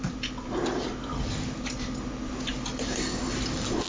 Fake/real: real